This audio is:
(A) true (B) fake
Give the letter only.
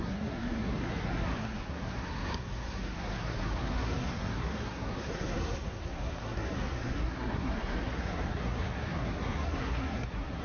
B